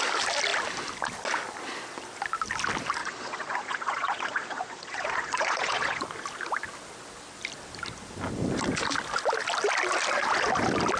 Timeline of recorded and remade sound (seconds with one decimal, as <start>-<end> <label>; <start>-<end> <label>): 0.0-3.0 recorded; 3.0-6.0 remade; 6.0-11.0 recorded